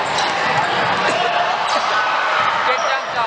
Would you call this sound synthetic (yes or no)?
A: no